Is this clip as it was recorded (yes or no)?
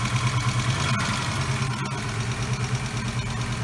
yes